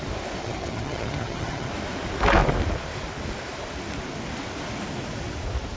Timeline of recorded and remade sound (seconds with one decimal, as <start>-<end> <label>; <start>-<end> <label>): 0.0-0.4 recorded; 0.4-1.7 remade; 1.7-5.8 recorded

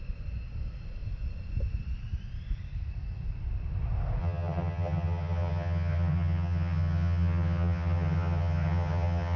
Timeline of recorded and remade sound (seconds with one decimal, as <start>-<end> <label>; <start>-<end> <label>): 0.0-4.2 recorded; 4.2-9.4 remade

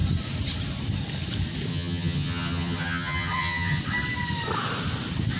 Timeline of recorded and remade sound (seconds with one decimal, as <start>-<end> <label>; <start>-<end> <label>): 0.0-1.7 recorded; 1.7-3.8 remade; 3.8-5.4 recorded

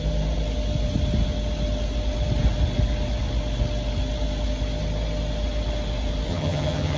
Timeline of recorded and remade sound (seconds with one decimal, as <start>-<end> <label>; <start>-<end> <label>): 0.0-6.3 recorded; 6.3-7.0 remade